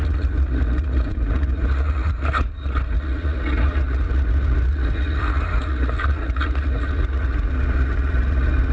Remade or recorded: remade